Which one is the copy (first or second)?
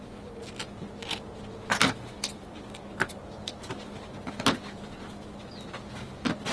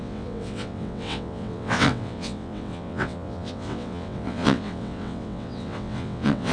second